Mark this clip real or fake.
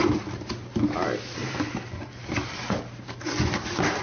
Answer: real